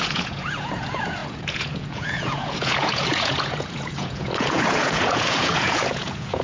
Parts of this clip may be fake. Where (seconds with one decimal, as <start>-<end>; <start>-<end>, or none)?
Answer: 0.0-6.4